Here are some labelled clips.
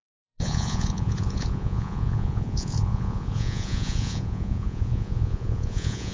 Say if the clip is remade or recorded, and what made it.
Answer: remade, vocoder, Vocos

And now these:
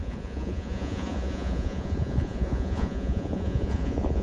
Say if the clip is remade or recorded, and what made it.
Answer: remade, vocoder, Vocos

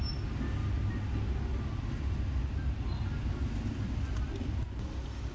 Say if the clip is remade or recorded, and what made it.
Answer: recorded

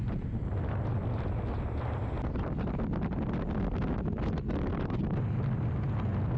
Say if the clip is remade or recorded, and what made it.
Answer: recorded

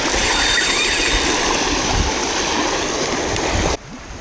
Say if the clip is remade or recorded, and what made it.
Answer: recorded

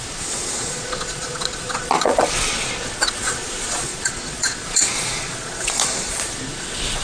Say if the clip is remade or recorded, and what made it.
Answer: remade, vocoder, Vocos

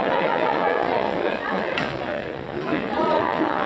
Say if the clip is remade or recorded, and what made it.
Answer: remade, vocoder, Vocos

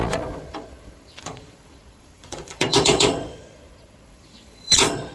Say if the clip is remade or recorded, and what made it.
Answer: remade, vocoder, Vocos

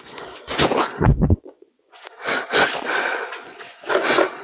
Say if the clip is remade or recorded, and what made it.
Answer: remade, vocoder, Vocos